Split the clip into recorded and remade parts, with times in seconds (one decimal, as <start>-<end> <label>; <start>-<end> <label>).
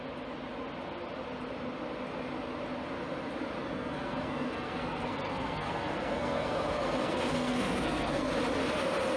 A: 0.0-3.6 recorded; 3.6-8.3 remade; 8.3-9.2 recorded